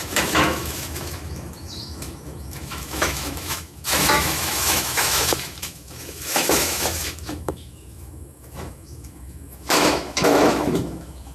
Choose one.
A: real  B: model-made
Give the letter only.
B